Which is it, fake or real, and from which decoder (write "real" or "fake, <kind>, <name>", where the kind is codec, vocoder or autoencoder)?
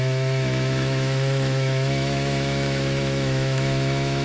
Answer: fake, autoencoder, DAC-VAE